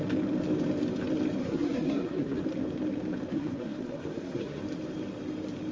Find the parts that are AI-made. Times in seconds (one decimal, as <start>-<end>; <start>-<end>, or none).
1.4-2.4; 3.3-4.6